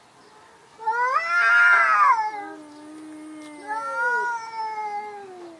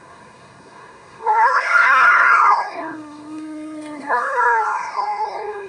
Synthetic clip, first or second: second